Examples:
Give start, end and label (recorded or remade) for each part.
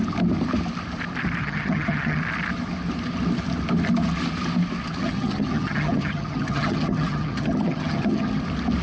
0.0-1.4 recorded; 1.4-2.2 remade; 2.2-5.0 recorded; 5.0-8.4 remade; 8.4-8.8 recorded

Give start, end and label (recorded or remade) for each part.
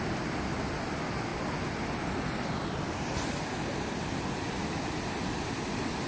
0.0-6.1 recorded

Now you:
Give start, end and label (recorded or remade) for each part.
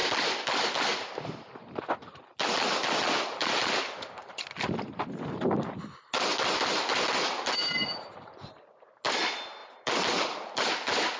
0.0-11.2 recorded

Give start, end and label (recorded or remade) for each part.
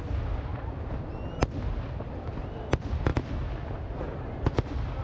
0.0-5.0 recorded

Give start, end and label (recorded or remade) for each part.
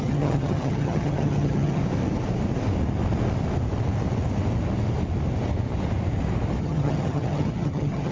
0.0-1.8 remade; 1.8-6.6 recorded; 6.6-8.1 remade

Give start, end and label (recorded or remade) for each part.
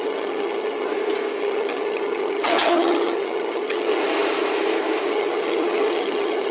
0.0-0.9 remade; 0.9-1.4 recorded; 1.4-4.0 remade; 4.0-5.1 recorded; 5.1-6.5 remade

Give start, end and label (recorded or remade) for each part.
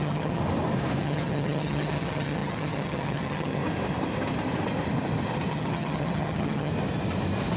0.0-0.4 remade; 0.4-1.0 recorded; 1.0-3.6 remade; 3.6-5.5 recorded; 5.5-6.7 remade; 6.7-7.6 recorded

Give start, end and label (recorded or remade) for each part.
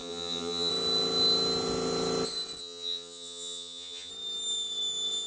0.0-0.7 remade; 0.7-2.6 recorded; 2.6-4.1 remade; 4.1-5.3 recorded